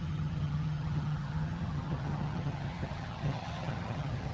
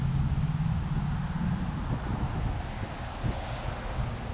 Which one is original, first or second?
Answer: second